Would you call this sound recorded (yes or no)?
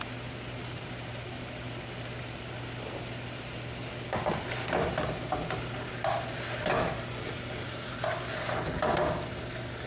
yes